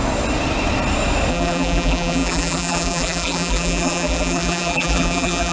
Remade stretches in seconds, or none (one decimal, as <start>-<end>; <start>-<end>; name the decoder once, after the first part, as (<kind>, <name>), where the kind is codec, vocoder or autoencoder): 1.3-5.5 (vocoder, BigVGAN v2)